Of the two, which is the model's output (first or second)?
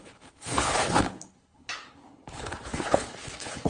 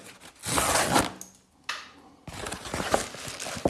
first